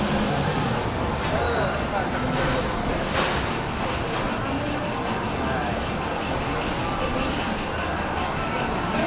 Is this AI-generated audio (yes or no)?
no